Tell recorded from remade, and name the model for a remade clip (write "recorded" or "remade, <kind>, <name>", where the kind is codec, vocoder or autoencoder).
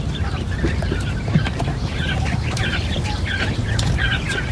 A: remade, vocoder, BigVGAN v2